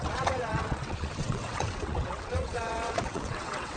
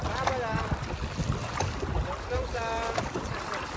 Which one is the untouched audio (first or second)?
second